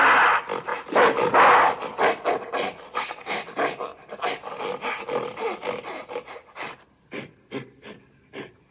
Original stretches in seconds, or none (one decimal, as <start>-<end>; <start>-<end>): 0.0-8.7